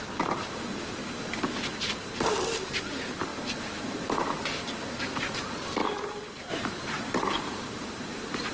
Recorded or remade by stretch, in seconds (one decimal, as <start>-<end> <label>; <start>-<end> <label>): 0.0-1.0 remade; 1.0-2.3 recorded; 2.3-5.8 remade; 5.8-6.5 recorded; 6.5-8.5 remade